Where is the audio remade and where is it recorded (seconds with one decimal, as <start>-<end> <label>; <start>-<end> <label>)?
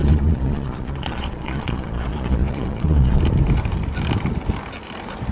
0.0-3.2 remade; 3.2-5.3 recorded